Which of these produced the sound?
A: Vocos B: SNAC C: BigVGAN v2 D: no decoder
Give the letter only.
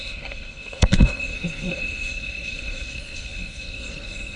B